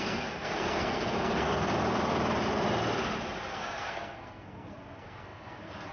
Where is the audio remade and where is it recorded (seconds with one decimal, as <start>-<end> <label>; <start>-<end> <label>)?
0.0-1.7 remade; 1.7-3.5 recorded; 3.5-5.9 remade